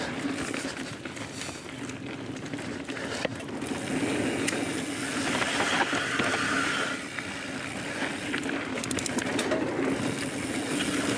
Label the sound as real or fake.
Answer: real